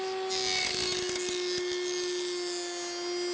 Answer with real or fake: real